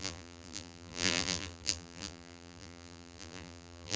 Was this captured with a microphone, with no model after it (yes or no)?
no